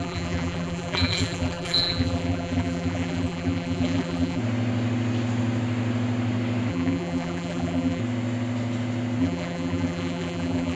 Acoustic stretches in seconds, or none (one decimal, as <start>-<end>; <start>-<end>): 4.4-6.7; 8.0-9.2